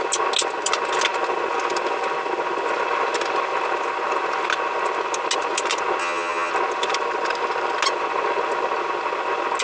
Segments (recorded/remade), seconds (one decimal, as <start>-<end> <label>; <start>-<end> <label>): 0.0-6.0 recorded; 6.0-6.5 remade; 6.5-9.6 recorded